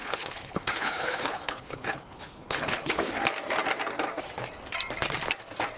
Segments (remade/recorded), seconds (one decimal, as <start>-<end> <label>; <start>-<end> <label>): 0.0-3.1 remade; 3.1-5.8 recorded